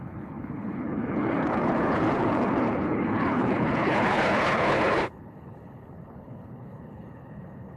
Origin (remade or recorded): remade